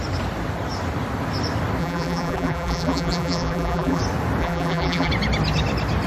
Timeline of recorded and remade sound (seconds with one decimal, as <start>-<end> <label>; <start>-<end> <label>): 0.0-1.8 recorded; 1.8-4.0 remade; 4.0-4.4 recorded; 4.4-5.1 remade; 5.1-6.1 recorded